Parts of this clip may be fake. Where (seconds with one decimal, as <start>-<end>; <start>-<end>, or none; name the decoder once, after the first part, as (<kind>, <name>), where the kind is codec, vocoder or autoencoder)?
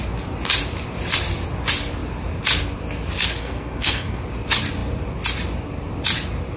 3.4-4.2 (codec, SNAC)